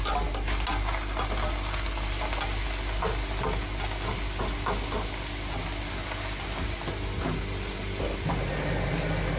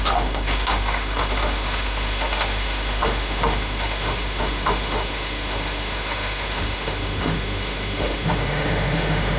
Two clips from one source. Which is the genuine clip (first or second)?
first